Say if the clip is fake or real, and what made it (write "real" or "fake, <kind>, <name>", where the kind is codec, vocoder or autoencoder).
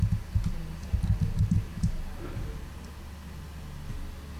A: real